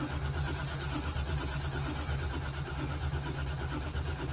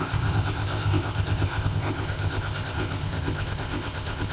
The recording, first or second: first